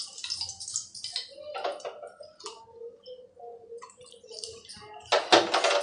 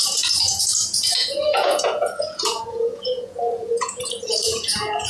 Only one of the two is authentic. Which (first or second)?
first